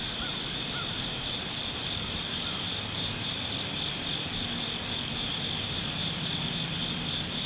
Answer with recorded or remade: recorded